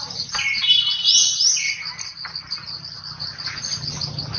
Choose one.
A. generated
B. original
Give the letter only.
B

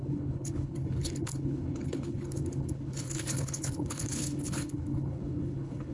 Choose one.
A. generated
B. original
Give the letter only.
A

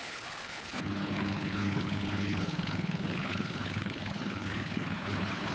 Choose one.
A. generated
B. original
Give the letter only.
A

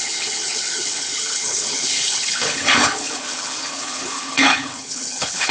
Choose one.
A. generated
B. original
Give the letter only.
A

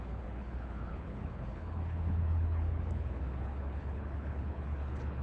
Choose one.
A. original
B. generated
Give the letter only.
B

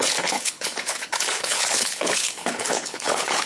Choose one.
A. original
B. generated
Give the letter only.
B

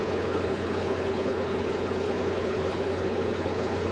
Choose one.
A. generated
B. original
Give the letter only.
A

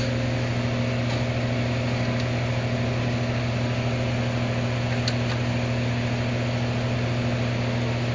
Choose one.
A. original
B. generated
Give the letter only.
A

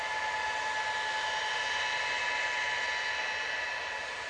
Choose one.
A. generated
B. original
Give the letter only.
B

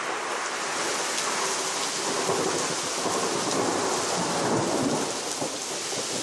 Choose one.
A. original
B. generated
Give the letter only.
A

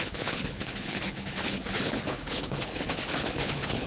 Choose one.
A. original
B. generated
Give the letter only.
B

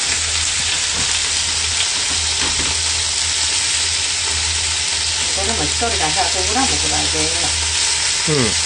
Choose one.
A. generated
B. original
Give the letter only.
B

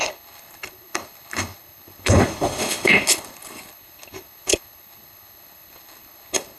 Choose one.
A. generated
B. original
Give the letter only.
A